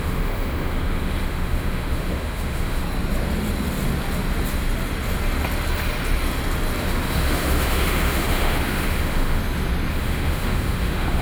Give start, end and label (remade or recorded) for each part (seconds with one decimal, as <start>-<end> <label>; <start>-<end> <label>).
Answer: 0.0-2.8 remade; 2.8-6.8 recorded; 6.8-9.4 remade; 9.4-9.9 recorded; 9.9-11.2 remade